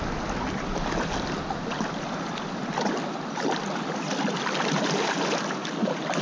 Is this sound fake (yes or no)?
no